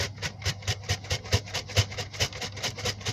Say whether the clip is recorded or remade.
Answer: recorded